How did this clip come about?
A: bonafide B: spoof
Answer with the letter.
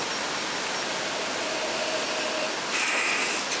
A